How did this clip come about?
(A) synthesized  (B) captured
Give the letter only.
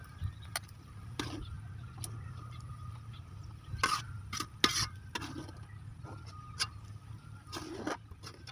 B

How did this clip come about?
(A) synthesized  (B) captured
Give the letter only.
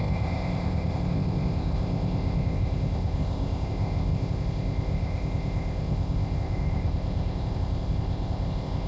A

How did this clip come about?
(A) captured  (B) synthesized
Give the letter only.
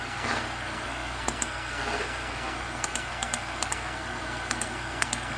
B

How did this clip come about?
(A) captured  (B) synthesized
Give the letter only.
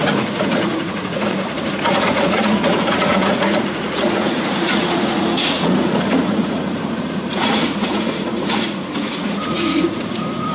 B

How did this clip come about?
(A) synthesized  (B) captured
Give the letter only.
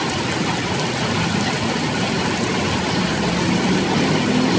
B